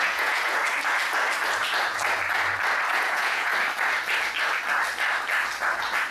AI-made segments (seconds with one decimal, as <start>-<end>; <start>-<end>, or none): 0.0-0.6; 2.9-3.5